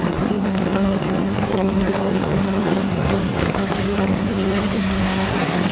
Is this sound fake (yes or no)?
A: yes